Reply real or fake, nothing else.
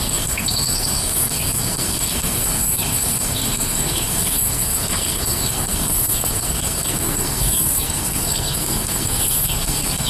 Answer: fake